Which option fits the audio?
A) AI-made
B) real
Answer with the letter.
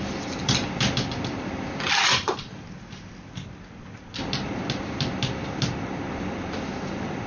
B